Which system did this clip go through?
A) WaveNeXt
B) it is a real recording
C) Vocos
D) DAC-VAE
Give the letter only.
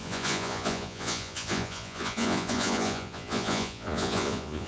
C